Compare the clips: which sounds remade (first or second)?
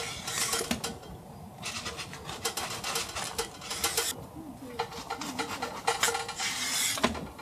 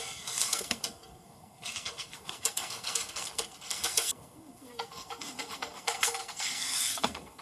second